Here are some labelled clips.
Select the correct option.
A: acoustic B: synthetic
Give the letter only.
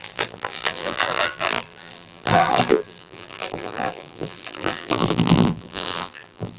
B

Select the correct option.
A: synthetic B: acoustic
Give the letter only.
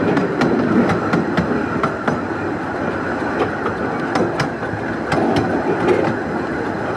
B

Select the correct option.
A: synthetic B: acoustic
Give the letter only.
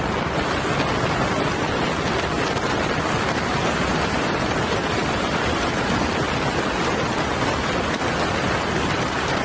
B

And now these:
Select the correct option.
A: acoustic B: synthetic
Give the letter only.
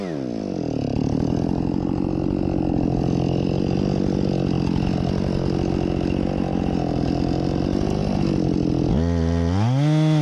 A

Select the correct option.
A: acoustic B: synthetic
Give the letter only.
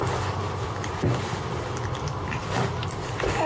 A